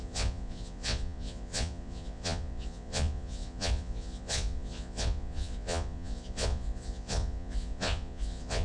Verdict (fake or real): fake